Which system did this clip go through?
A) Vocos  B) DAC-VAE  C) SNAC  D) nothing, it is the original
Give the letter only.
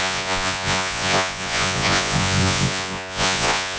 A